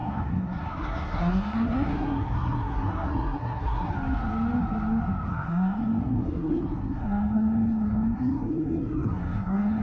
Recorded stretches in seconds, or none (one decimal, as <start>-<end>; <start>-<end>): 3.9-5.3